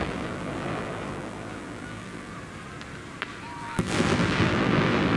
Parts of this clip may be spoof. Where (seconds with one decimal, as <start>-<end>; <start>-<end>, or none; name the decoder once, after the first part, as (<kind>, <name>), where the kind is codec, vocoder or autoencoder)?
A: 0.0-2.3 (vocoder, BigVGAN v2); 3.6-5.2